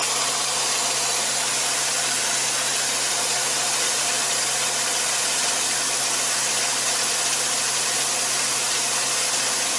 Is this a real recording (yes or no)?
yes